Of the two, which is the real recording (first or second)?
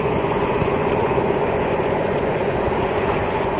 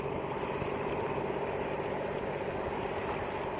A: second